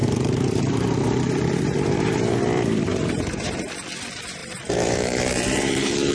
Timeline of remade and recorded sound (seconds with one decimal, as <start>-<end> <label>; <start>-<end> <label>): 0.0-3.7 remade; 3.7-4.4 recorded; 4.4-6.1 remade

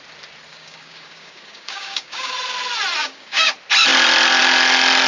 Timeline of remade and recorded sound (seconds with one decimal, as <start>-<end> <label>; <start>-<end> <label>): 0.0-0.5 recorded; 0.5-2.3 remade; 2.3-3.0 recorded; 3.0-3.5 remade; 3.5-5.1 recorded

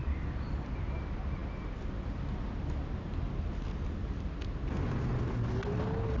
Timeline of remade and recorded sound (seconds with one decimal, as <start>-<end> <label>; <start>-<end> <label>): 0.0-6.2 recorded

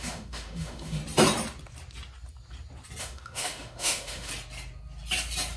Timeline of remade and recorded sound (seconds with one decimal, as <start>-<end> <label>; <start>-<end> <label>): 0.0-1.0 remade; 1.0-3.0 recorded; 3.0-4.3 remade; 4.3-5.6 recorded